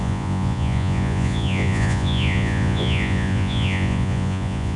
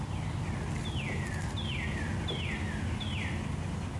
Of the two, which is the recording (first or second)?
second